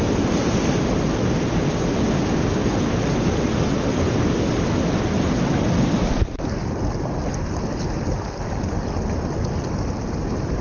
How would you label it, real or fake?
real